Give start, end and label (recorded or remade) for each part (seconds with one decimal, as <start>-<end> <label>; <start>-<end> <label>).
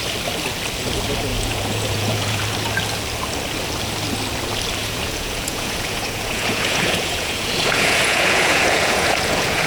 0.0-1.3 recorded; 1.3-2.4 remade; 2.4-4.8 recorded; 4.8-9.7 remade